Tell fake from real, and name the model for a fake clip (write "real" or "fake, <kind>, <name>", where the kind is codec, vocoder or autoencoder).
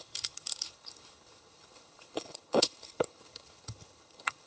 fake, codec, HILCodec